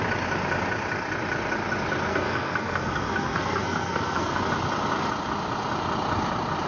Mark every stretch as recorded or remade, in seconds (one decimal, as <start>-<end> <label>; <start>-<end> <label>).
0.0-2.1 recorded; 2.1-4.4 remade; 4.4-6.7 recorded